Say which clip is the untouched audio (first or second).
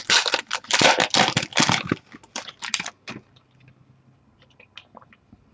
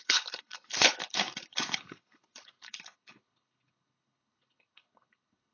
first